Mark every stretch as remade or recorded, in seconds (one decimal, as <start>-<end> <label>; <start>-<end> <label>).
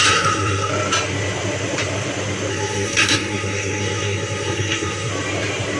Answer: 0.0-0.7 remade; 0.7-2.5 recorded; 2.5-5.1 remade; 5.1-5.8 recorded